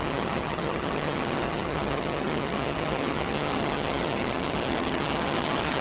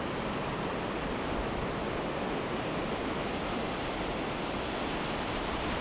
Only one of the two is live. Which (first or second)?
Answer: second